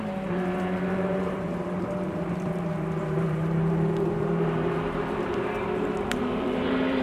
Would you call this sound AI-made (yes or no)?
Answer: yes